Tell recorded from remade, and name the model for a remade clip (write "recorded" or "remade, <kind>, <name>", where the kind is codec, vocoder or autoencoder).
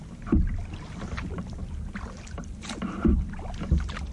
recorded